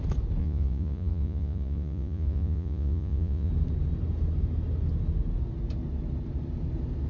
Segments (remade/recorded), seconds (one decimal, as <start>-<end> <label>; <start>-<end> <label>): 0.0-0.4 recorded; 0.4-3.5 remade; 3.5-7.1 recorded